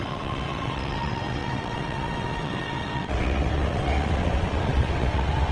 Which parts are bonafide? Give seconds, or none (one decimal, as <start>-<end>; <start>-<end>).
none